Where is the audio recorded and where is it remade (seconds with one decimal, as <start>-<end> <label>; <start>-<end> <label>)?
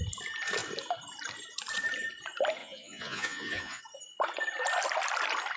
0.0-2.6 recorded; 2.6-3.8 remade; 3.8-5.6 recorded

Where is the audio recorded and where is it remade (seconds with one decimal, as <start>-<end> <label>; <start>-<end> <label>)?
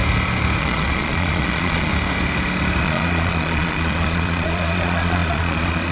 0.0-0.6 recorded; 0.6-1.9 remade; 1.9-2.8 recorded; 2.8-5.9 remade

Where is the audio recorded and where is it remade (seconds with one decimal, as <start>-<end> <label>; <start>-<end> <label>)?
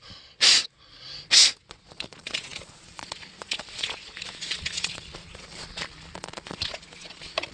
0.0-0.9 remade; 0.9-1.6 recorded; 1.6-7.5 remade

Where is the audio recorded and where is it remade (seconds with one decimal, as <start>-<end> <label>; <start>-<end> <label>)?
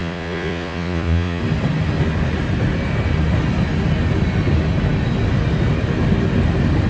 0.0-1.4 remade; 1.4-6.9 recorded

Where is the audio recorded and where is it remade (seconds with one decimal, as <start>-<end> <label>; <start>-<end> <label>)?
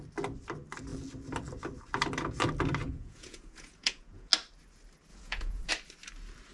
0.0-2.8 recorded; 2.8-4.3 remade; 4.3-5.1 recorded; 5.1-5.7 remade; 5.7-6.5 recorded